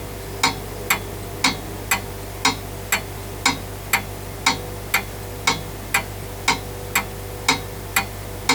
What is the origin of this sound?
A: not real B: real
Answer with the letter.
B